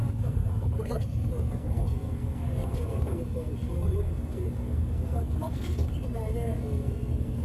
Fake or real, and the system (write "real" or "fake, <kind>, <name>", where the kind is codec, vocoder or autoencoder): fake, codec, SNAC